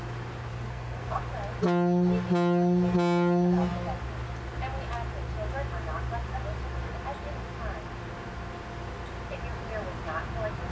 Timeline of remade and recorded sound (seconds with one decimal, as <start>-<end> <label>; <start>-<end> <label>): 0.0-0.5 recorded; 0.5-1.2 remade; 1.2-10.7 recorded